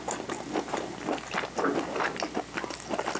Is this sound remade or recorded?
recorded